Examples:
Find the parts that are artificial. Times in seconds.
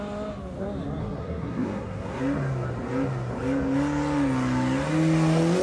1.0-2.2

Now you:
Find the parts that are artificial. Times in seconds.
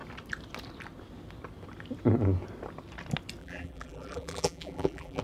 3.4-5.2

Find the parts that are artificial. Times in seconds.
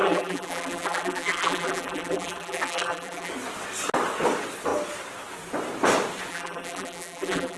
0.0-3.3; 6.3-7.6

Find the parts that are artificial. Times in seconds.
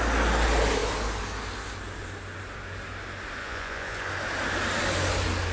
3.4-4.1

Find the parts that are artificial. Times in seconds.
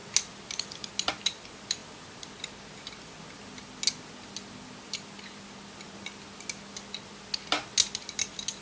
none